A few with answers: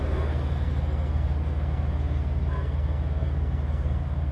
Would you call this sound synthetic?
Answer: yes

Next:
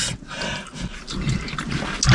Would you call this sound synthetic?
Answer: no